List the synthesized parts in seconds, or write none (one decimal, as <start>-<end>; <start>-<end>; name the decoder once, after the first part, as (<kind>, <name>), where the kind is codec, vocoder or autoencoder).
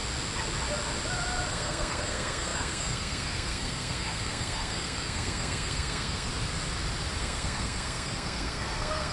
1.5-6.3 (codec, SNAC); 7.2-9.1